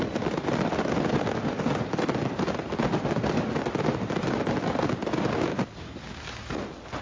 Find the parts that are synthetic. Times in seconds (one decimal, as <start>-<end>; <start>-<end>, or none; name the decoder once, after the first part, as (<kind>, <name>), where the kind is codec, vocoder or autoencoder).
none